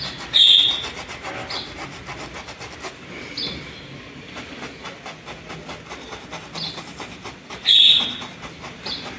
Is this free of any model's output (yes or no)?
yes